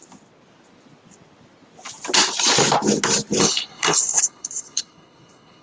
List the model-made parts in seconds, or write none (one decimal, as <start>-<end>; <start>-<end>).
3.4-5.6